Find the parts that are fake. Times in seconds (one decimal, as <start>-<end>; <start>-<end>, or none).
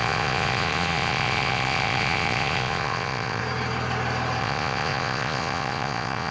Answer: 0.0-3.4; 4.4-6.3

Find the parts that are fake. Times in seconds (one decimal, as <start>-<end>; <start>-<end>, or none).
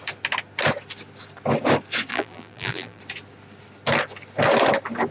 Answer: 2.1-3.0